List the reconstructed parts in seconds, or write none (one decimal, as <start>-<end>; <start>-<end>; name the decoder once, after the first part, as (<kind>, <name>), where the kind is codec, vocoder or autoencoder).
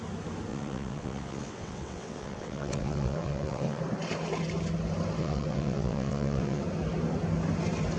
0.5-3.8 (vocoder, WaveNeXt); 5.2-6.6